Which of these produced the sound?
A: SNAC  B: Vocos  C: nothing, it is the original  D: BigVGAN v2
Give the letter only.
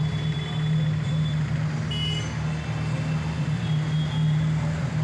C